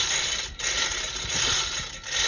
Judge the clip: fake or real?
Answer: real